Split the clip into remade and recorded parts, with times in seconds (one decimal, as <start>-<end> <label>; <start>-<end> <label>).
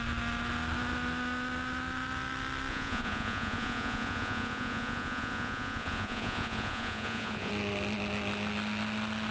0.0-2.7 recorded; 2.7-7.5 remade; 7.5-9.3 recorded